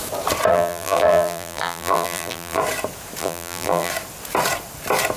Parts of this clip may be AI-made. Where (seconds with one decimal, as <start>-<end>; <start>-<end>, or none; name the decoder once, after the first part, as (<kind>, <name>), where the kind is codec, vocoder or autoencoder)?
0.5-2.6 (vocoder, BigVGAN v2); 3.2-3.9